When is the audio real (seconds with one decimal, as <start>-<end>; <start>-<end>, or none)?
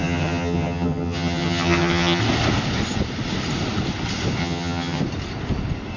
2.2-4.4; 5.0-6.0